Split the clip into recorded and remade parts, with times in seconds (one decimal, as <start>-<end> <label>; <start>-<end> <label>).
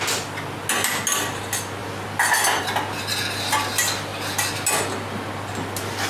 0.0-6.1 recorded